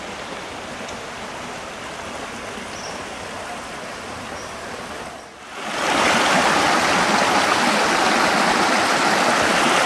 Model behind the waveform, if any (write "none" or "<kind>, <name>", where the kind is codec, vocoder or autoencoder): none